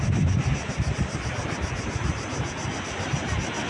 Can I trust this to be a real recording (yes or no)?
yes